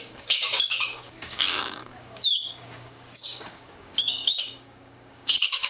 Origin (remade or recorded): remade